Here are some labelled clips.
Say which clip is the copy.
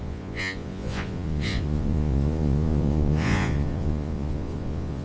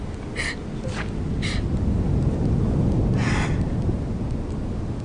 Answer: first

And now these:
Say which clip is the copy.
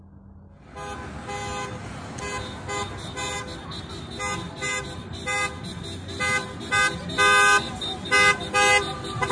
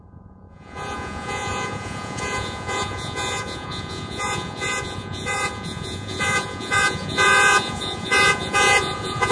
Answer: second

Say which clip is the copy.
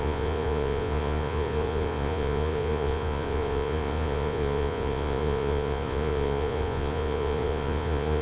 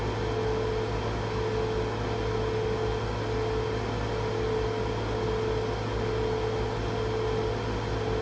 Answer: first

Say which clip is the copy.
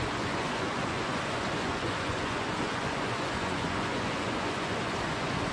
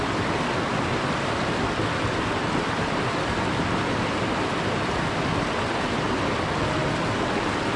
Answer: first